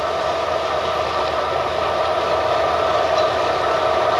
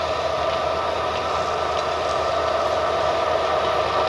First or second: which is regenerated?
first